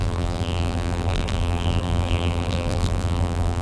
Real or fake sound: fake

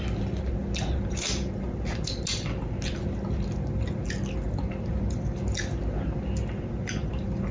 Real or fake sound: real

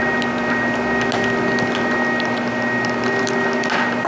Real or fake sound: real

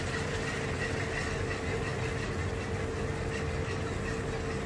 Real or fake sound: real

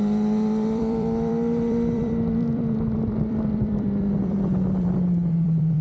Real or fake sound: fake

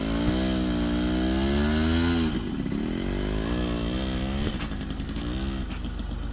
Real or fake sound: real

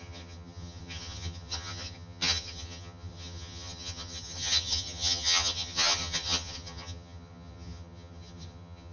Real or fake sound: fake